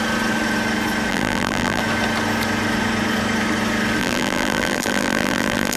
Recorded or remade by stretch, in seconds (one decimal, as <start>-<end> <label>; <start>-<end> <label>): 0.0-1.1 recorded; 1.1-1.8 remade; 1.8-4.0 recorded; 4.0-5.8 remade